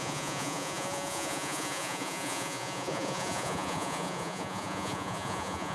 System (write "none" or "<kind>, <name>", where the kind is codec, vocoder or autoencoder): vocoder, Vocos